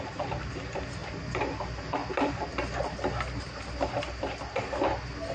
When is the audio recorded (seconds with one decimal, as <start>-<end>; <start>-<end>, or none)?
0.0-5.3